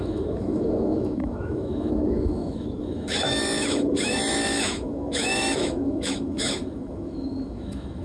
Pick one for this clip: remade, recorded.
remade